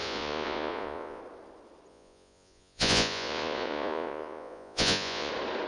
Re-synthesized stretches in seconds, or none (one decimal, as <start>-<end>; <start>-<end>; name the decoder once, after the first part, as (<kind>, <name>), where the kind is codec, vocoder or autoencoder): 0.0-1.2 (vocoder, Vocos); 1.9-5.3